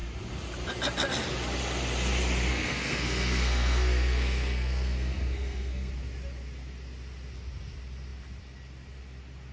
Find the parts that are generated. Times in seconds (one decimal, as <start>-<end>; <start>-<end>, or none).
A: 2.5-5.9